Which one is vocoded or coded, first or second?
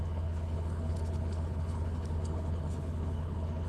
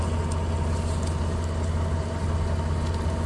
first